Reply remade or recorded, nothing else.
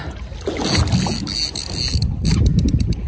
recorded